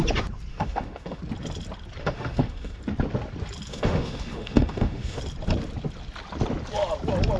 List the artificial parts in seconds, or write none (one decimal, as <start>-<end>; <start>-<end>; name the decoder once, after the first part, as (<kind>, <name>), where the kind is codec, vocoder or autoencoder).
0.5-1.2 (autoencoder, DAC-VAE); 2.0-2.8; 3.7-5.2